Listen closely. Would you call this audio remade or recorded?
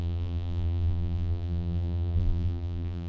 remade